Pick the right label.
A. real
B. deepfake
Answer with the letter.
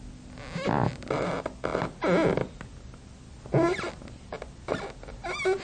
A